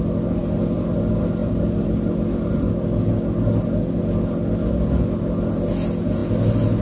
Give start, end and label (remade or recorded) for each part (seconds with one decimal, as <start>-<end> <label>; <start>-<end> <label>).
0.0-1.4 recorded; 1.4-1.9 remade; 1.9-6.8 recorded